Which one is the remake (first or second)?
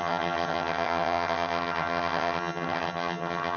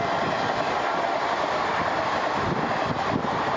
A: first